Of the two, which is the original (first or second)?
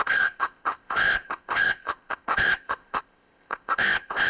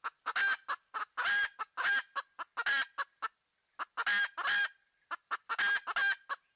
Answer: second